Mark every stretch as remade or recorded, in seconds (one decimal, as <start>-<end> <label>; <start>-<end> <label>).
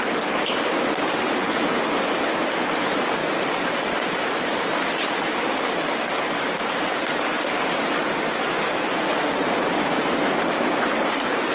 0.0-3.2 recorded; 3.2-7.4 remade; 7.4-11.5 recorded